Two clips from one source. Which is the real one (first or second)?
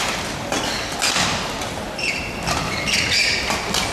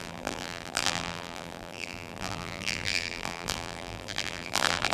first